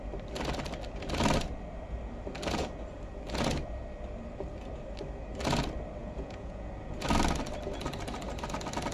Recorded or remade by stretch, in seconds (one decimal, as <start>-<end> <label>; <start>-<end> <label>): 0.0-6.0 recorded; 6.0-6.7 remade; 6.7-8.9 recorded